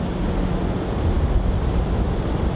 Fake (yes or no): no